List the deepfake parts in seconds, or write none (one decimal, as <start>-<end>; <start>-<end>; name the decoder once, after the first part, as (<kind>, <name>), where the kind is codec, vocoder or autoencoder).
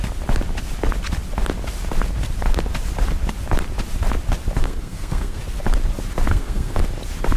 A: 4.6-5.4 (codec, SNAC); 6.3-6.8